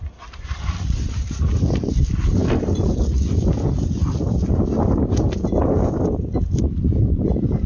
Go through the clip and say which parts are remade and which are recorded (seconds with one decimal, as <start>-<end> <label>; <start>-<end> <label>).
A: 0.0-7.7 recorded